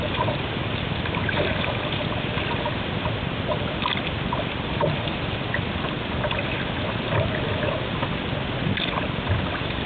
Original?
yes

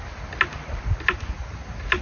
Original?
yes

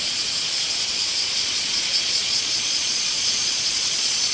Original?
no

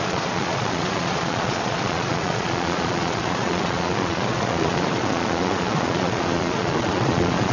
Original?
no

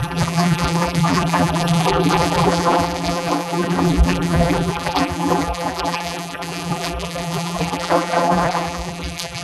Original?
no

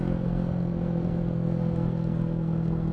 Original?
no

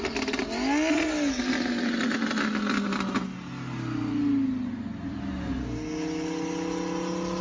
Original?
yes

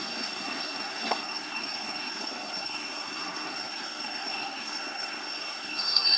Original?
no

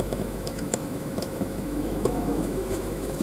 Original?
no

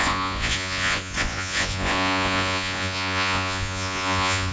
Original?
no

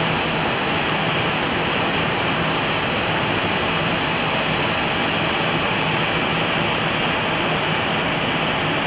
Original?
yes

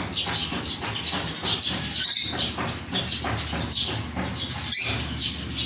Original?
yes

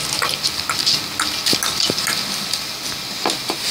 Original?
yes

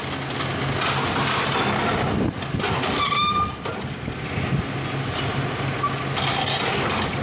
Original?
yes